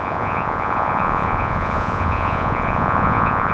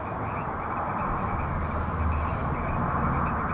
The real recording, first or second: second